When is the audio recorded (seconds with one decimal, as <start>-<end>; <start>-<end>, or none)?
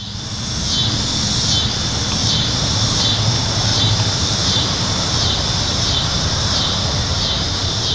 0.0-2.2; 3.0-3.7